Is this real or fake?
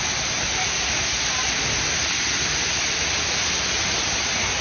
real